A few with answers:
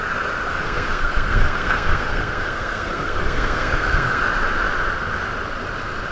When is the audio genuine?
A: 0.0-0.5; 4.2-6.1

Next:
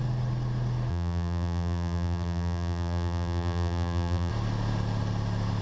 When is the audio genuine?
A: 0.0-0.9; 4.3-5.6